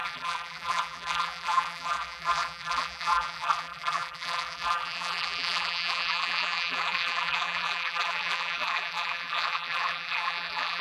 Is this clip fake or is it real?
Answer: fake